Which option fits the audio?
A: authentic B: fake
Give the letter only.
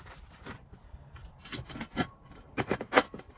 B